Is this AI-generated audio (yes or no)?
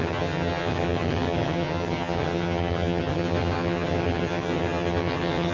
yes